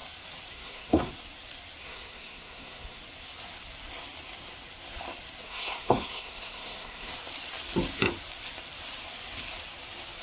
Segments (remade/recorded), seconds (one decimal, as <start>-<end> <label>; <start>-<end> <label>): 0.0-0.5 recorded; 0.5-1.1 remade; 1.1-1.8 recorded; 1.8-3.0 remade; 3.0-5.4 recorded; 5.4-7.1 remade; 7.1-10.2 recorded